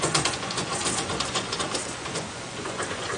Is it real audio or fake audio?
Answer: fake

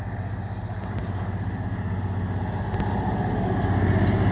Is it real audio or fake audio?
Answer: real